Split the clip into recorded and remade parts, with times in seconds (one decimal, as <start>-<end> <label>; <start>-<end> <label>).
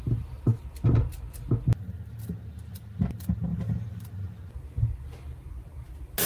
0.0-6.3 recorded